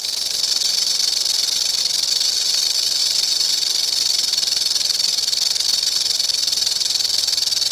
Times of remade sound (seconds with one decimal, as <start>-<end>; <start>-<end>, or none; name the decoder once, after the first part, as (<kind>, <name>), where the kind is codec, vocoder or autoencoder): 0.0-1.8 (vocoder, BigVGAN v2); 3.0-7.7